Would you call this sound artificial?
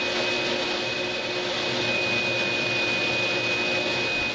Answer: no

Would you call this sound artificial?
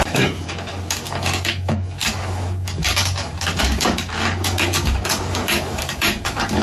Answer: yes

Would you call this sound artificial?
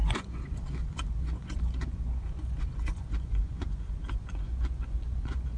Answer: yes